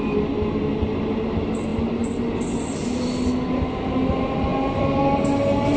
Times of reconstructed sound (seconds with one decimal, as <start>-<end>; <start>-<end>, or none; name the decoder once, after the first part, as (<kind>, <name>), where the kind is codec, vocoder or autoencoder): none